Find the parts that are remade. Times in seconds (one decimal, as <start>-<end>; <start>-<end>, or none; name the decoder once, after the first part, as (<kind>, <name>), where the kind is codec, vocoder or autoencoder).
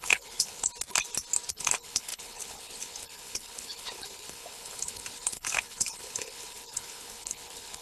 0.0-0.7 (codec, HILCodec); 1.5-7.8